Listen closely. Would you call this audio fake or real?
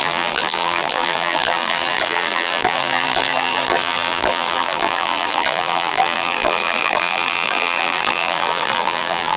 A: fake